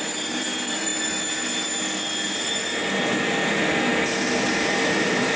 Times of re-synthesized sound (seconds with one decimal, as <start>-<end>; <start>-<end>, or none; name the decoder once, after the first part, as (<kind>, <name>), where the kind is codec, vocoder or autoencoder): 0.0-0.9 (vocoder, BigVGAN v2); 3.3-3.9; 4.6-5.4